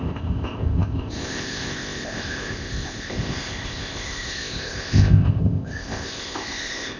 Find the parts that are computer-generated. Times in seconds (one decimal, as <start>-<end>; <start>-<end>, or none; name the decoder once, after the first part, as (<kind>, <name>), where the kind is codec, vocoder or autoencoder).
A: 0.0-7.0 (codec, ZipCodec)